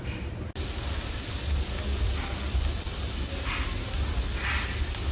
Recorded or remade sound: recorded